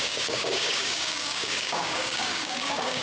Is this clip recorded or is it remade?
remade